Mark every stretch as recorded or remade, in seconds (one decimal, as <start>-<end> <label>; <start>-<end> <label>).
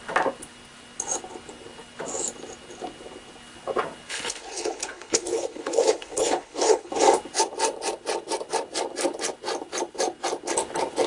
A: 0.0-4.1 recorded; 4.1-6.9 remade; 6.9-11.1 recorded